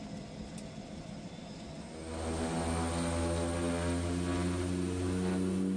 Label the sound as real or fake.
real